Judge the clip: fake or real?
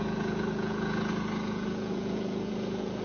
fake